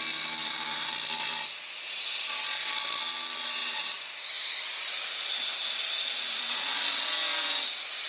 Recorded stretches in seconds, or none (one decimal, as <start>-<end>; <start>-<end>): 0.0-0.4; 0.9-3.6; 4.3-5.6; 6.8-8.1